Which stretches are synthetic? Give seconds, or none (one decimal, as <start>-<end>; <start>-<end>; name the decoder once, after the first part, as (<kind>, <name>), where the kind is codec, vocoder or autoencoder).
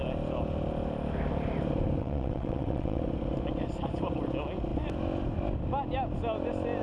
2.0-3.0 (vocoder, WaveNeXt)